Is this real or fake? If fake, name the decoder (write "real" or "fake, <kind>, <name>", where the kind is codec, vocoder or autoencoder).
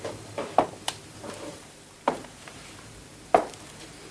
fake, vocoder, BigVGAN v2